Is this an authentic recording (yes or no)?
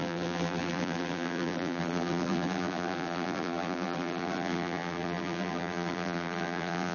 no